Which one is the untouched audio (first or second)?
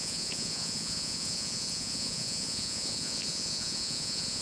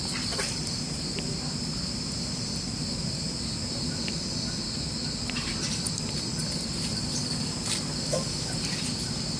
second